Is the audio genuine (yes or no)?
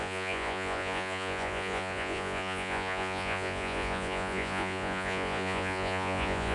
no